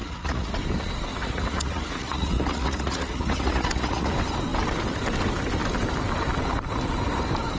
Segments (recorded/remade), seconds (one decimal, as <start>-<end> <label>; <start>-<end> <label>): 0.0-0.6 remade; 0.6-1.1 recorded; 1.1-4.1 remade; 4.1-7.6 recorded